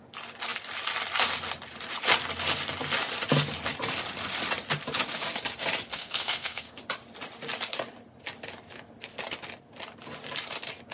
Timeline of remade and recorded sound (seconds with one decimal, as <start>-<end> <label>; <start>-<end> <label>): 0.0-5.9 recorded; 5.9-6.8 remade; 6.8-10.9 recorded